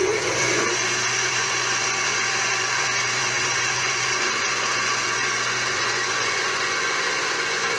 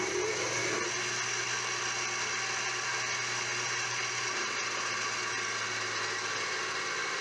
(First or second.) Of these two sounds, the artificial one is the first